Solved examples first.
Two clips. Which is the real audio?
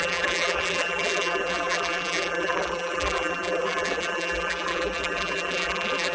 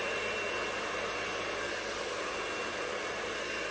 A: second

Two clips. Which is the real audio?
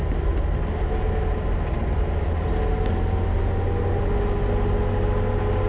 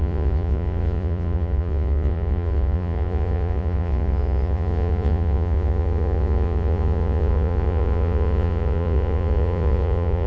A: first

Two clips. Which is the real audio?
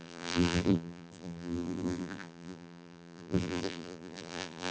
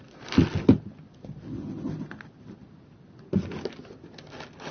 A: second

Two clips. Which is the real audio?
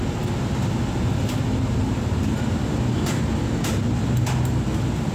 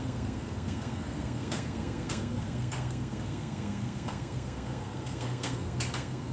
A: first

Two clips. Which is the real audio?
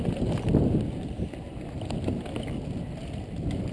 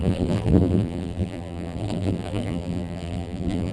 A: first